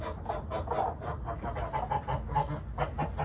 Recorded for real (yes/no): yes